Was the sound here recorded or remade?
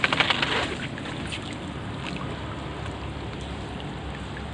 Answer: recorded